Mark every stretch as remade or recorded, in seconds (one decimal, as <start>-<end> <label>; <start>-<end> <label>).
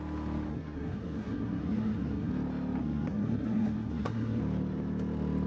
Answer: 0.0-0.5 recorded; 0.5-2.3 remade; 2.3-2.8 recorded; 2.8-4.4 remade; 4.4-5.5 recorded